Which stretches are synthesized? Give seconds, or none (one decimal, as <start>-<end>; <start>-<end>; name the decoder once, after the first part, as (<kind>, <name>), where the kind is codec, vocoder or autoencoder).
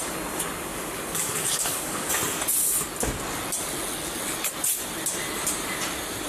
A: 0.7-2.1 (codec, DAC)